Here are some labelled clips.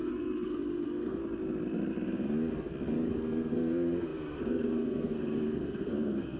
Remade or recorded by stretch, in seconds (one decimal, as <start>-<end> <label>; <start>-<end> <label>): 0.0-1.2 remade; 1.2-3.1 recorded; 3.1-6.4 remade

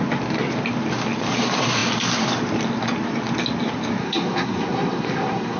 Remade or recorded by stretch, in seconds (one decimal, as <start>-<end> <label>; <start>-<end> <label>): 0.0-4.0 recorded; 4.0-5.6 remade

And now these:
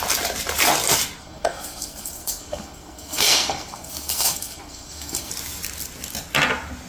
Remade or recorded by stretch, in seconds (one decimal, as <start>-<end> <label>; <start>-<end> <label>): 0.0-1.2 recorded; 1.2-5.3 remade; 5.3-6.9 recorded

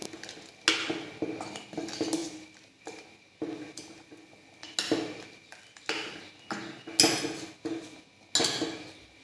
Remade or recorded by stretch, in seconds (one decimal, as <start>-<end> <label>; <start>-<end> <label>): 0.0-9.2 recorded